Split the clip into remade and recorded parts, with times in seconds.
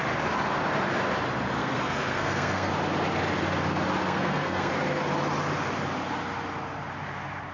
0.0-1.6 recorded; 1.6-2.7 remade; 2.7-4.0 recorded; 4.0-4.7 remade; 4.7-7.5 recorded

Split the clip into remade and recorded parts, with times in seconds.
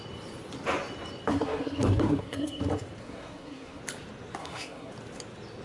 0.0-1.3 recorded; 1.3-2.6 remade; 2.6-3.0 recorded; 3.0-3.8 remade; 3.8-4.4 recorded; 4.4-4.9 remade; 4.9-5.6 recorded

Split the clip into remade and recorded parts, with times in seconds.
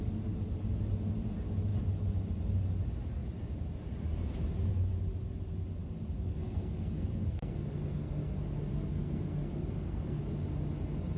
0.0-6.3 recorded; 6.3-10.2 remade; 10.2-11.2 recorded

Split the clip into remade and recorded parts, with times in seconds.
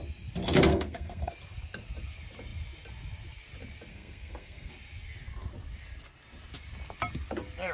0.0-0.7 recorded; 0.7-1.3 remade; 1.3-3.9 recorded; 3.9-4.7 remade; 4.7-7.7 recorded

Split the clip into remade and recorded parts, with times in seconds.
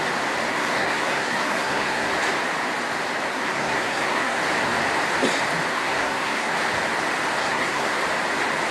0.0-0.5 recorded; 0.5-2.1 remade; 2.1-3.3 recorded; 3.3-4.4 remade; 4.4-5.7 recorded; 5.7-6.5 remade; 6.5-7.4 recorded; 7.4-8.0 remade; 8.0-8.7 recorded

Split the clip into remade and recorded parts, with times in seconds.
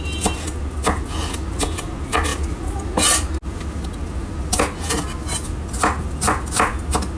0.0-7.2 recorded